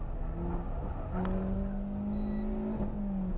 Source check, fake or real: real